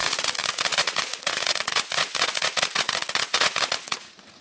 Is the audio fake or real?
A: fake